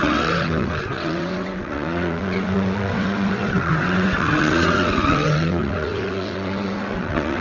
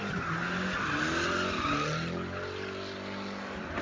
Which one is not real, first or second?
first